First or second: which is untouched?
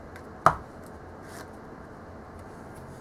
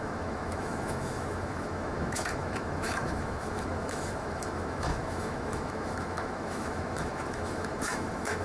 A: first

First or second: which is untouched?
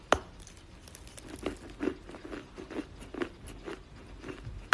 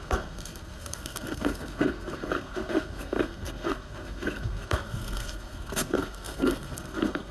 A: first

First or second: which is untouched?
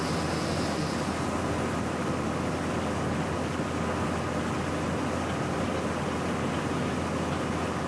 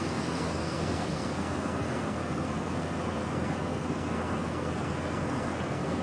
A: first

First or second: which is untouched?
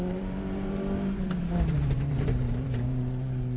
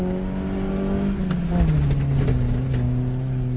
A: second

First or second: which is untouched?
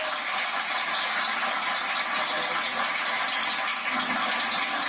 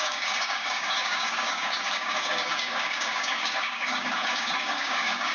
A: first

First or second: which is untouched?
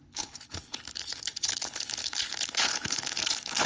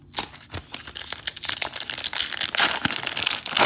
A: second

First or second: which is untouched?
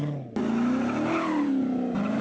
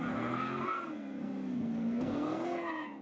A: first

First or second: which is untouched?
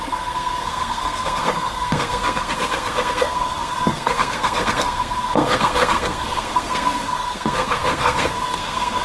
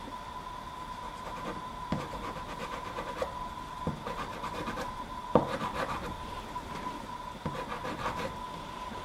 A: second